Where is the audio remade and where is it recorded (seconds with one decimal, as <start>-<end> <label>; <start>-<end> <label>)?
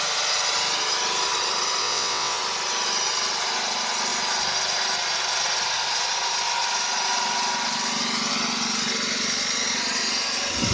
0.0-1.8 recorded; 1.8-2.4 remade; 2.4-10.7 recorded